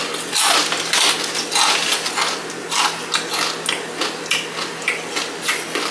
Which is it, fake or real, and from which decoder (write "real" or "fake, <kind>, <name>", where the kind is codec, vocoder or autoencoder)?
real